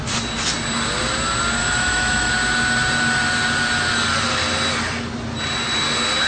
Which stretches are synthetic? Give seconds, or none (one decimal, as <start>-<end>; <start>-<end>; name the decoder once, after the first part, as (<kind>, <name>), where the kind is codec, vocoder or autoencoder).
1.6-2.3 (autoencoder, DAC-VAE)